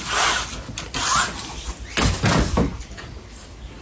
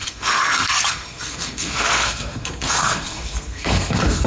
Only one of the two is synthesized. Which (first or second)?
second